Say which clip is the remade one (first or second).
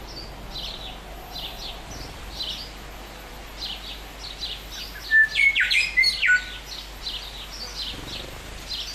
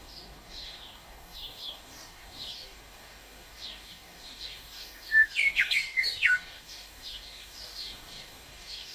second